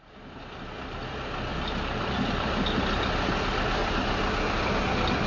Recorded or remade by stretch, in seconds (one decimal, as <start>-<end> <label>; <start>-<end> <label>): 0.0-5.3 recorded